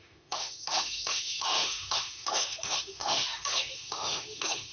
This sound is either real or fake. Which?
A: fake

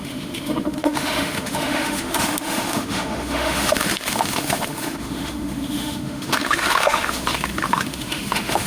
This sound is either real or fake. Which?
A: fake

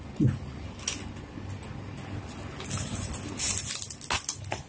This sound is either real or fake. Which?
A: real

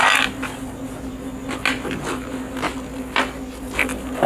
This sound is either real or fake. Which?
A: real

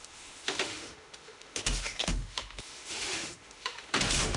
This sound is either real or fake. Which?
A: fake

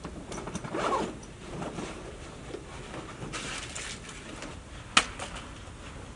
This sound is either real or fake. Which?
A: real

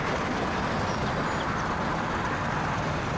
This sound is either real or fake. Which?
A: real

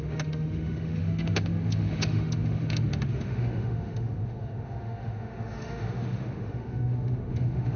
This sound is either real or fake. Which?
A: fake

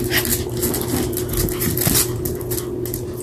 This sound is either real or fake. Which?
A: real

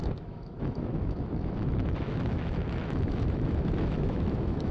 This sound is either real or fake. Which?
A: fake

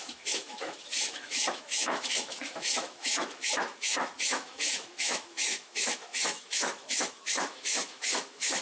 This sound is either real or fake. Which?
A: fake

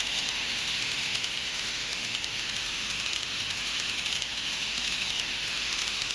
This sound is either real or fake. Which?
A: fake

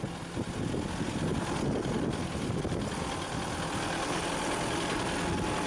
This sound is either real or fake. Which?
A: real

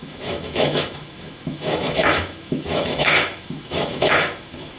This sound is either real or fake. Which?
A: fake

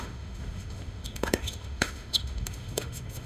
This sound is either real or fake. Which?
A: fake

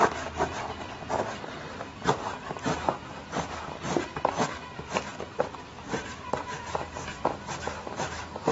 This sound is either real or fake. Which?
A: real